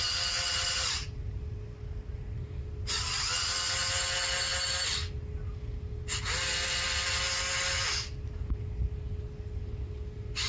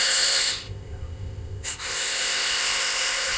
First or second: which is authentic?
first